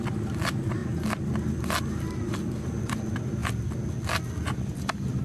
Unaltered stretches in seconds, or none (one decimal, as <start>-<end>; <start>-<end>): 0.0-5.2